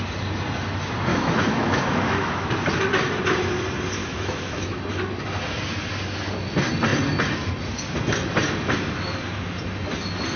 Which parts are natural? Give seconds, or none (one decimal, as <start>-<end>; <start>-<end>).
0.0-1.1; 2.5-4.0; 4.8-10.4